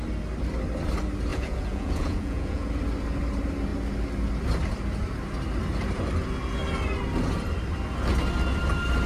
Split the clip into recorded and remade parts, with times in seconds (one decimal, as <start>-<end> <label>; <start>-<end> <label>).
0.0-1.3 recorded; 1.3-2.7 remade; 2.7-9.1 recorded